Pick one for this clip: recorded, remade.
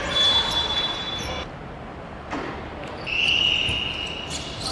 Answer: recorded